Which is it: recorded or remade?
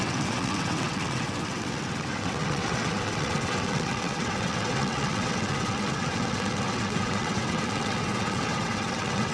remade